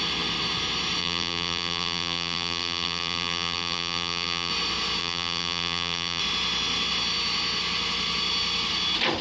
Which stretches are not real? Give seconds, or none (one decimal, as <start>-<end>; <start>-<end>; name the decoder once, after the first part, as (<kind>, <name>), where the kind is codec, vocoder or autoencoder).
1.0-4.5 (vocoder, BigVGAN v2); 5.0-6.2